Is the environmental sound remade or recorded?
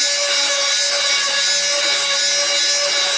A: recorded